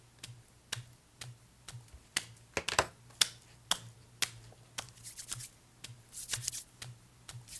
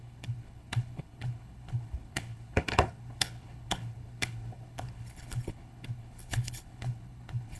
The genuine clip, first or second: first